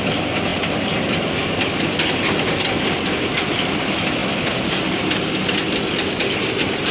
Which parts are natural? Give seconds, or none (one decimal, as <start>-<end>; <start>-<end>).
0.0-6.9